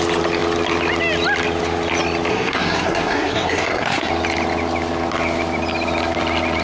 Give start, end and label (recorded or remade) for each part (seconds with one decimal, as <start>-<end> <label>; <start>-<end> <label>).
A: 0.0-2.3 recorded; 2.3-4.1 remade; 4.1-6.6 recorded